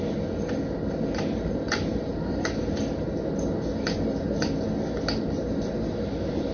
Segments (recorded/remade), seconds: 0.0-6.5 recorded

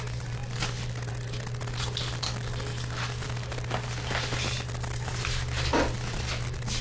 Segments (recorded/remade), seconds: 0.0-6.8 recorded

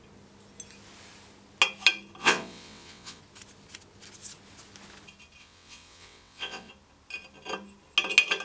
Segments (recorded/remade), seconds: 0.0-2.2 recorded; 2.2-3.2 remade; 3.2-5.4 recorded; 5.4-6.7 remade; 6.7-8.4 recorded

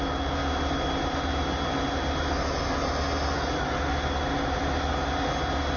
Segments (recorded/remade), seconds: 0.0-5.8 recorded

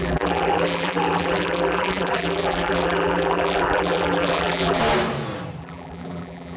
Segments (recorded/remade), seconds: 0.0-4.8 remade; 4.8-5.6 recorded; 5.6-6.6 remade

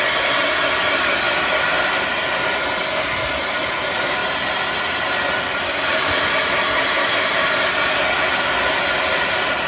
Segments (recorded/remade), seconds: 0.0-9.7 recorded

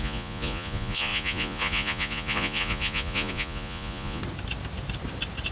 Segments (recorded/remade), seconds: 0.0-4.2 remade; 4.2-5.5 recorded

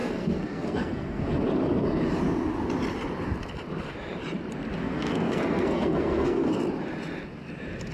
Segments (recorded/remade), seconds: 0.0-1.2 remade; 1.2-4.8 recorded; 4.8-6.6 remade; 6.6-7.9 recorded